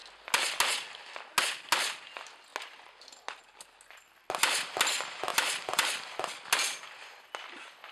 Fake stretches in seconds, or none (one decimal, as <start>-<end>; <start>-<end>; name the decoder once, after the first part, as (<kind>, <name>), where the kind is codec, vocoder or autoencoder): none